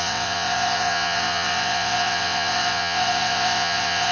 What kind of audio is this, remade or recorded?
remade